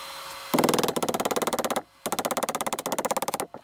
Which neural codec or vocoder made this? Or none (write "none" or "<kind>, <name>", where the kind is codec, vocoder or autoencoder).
none